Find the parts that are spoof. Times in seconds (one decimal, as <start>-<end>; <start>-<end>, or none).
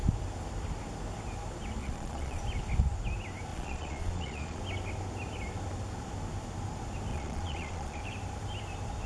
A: 1.8-2.4; 3.5-4.6; 7.1-8.0